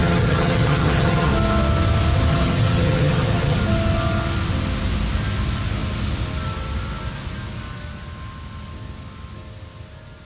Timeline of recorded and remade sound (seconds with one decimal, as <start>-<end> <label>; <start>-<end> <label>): 0.0-1.3 remade; 1.3-2.3 recorded; 2.3-3.6 remade; 3.6-10.2 recorded